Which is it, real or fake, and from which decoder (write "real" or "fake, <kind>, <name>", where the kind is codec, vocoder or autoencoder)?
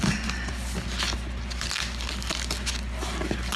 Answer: real